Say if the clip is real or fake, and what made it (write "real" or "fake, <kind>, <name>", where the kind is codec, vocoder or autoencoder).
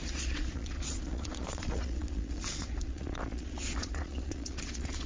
fake, vocoder, Vocos